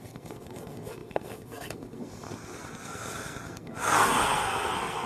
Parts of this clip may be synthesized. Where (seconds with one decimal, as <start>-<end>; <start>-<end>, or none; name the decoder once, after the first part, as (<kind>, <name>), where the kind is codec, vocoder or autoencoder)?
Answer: 0.0-5.1 (codec, SNAC)